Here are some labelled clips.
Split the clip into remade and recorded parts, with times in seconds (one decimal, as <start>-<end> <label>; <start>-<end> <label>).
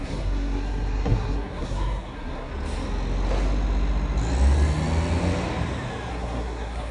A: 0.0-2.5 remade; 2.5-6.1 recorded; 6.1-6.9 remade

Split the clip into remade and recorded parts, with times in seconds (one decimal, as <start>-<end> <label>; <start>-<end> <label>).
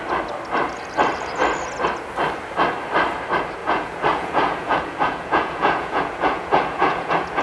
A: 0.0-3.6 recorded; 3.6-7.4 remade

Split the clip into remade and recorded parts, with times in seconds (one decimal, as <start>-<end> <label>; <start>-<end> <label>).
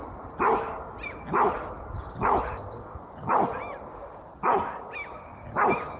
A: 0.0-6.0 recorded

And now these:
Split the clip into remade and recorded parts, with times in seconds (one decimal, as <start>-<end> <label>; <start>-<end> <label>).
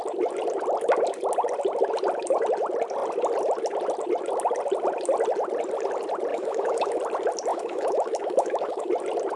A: 0.0-6.3 recorded; 6.3-7.0 remade; 7.0-7.5 recorded; 7.5-8.9 remade; 8.9-9.4 recorded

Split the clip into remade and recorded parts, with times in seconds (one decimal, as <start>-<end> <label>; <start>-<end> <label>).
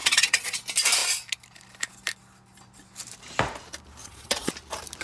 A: 0.0-0.6 remade; 0.6-4.0 recorded; 4.0-4.5 remade; 4.5-5.0 recorded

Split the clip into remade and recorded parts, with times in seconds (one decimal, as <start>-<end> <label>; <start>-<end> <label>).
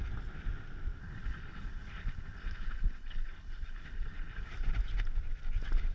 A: 0.0-1.0 recorded; 1.0-4.5 remade; 4.5-5.9 recorded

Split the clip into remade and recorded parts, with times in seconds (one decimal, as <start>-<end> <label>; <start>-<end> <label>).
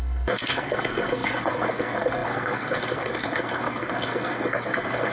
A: 0.0-5.1 remade